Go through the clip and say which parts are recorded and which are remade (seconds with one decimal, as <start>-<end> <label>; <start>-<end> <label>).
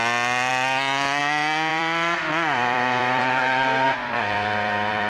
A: 0.0-0.5 recorded; 0.5-1.2 remade; 1.2-1.7 recorded; 1.7-5.1 remade